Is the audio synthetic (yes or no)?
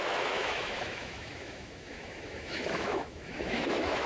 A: yes